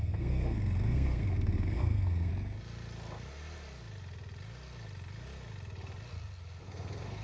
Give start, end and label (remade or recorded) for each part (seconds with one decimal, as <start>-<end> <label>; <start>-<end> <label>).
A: 0.0-2.3 remade; 2.3-6.6 recorded; 6.6-7.2 remade